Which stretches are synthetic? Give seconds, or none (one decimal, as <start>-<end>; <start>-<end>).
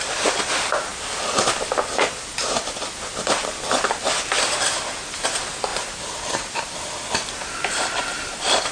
5.7-8.7